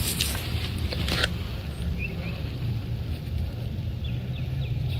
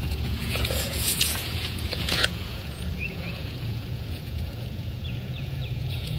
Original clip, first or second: first